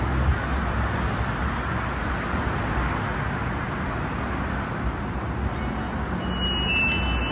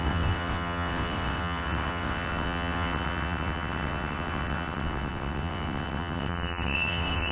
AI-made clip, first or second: second